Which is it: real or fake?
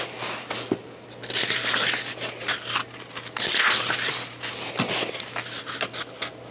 real